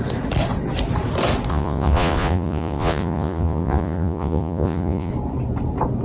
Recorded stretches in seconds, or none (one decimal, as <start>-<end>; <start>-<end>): 0.0-1.5; 5.1-6.0